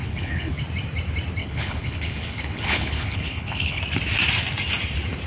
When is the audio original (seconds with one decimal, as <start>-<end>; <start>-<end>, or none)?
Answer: 0.6-1.4; 3.8-5.3